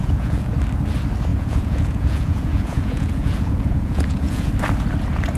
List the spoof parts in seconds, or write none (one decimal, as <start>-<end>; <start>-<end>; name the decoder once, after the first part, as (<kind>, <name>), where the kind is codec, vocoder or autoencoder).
0.0-0.5 (vocoder, Vocos); 1.3-4.5